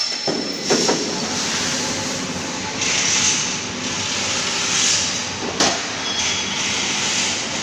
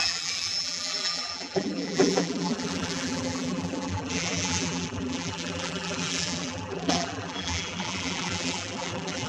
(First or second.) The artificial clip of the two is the second